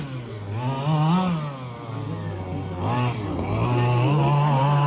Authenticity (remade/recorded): recorded